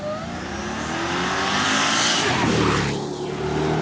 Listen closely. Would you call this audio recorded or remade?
recorded